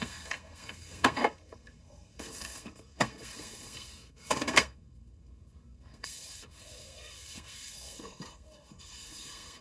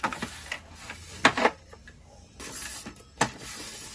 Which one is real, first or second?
second